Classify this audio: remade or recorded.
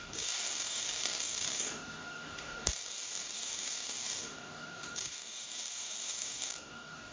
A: remade